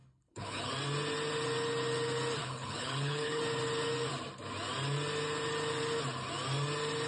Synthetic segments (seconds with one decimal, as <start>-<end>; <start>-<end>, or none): 0.0-0.7; 2.4-3.4